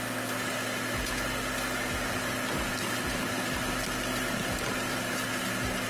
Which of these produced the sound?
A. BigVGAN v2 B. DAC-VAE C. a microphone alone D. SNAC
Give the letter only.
C